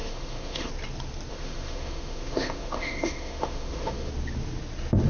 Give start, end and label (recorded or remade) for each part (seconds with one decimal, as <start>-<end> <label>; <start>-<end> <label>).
0.0-0.7 remade; 0.7-1.3 recorded; 1.3-4.1 remade; 4.1-5.1 recorded